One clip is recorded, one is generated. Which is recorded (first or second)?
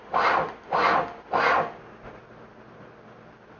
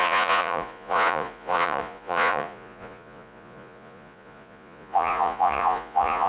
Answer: first